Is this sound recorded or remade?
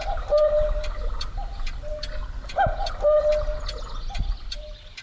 recorded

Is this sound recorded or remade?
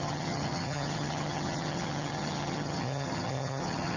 remade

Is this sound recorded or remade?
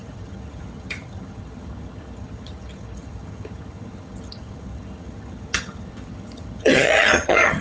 remade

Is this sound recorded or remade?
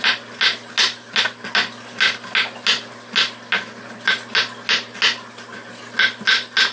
recorded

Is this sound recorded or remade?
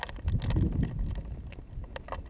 recorded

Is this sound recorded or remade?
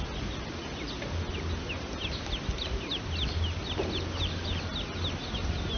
recorded